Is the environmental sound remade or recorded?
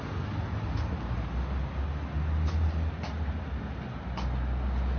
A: recorded